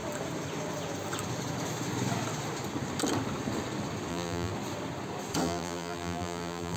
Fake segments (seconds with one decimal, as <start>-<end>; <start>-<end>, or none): 4.1-4.5; 5.4-6.8